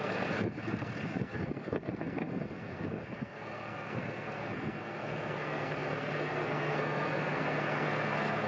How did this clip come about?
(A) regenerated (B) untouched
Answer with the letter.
A